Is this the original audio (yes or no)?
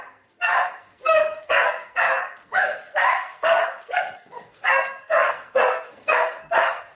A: no